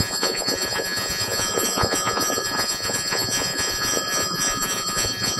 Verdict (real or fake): fake